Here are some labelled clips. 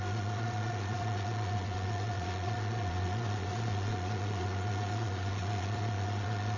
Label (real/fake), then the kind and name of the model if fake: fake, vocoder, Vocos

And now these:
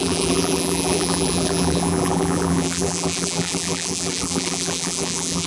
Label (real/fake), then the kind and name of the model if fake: fake, vocoder, BigVGAN v2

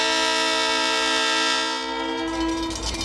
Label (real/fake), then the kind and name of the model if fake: real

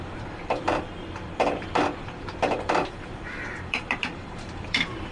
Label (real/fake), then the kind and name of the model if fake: fake, vocoder, BigVGAN v2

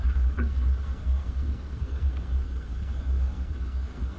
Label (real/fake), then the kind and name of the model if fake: fake, codec, SNAC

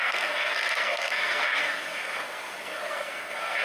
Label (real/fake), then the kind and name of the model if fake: fake, codec, SNAC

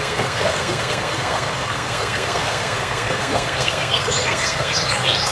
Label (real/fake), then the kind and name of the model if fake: fake, codec, SNAC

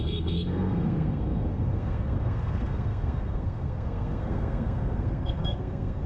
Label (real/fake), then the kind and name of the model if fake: fake, codec, SNAC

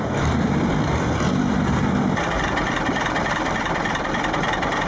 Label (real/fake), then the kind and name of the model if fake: fake, vocoder, BigVGAN v2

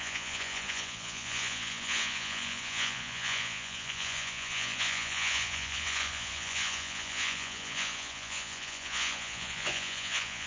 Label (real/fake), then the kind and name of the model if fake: fake, vocoder, Vocos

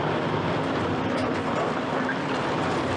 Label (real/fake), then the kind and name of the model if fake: real